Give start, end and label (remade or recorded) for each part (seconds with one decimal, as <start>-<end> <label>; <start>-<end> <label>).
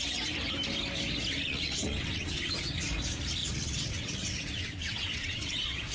0.0-1.4 recorded; 1.4-2.4 remade; 2.4-3.4 recorded; 3.4-5.9 remade